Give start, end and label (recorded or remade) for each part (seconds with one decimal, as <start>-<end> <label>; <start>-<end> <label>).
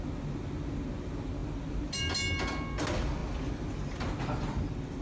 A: 0.0-5.0 recorded